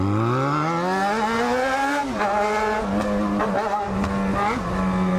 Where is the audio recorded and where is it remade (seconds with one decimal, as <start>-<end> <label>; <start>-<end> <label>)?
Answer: 0.0-5.2 recorded